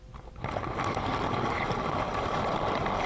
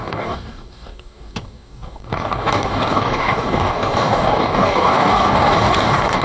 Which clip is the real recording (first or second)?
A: first